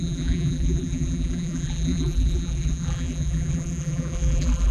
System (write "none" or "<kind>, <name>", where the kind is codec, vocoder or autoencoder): vocoder, BigVGAN v2